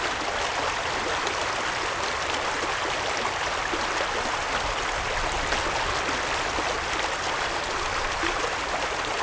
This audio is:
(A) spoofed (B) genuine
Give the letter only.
B